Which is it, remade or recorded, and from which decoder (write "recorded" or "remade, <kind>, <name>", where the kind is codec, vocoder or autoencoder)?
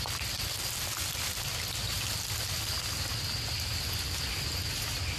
recorded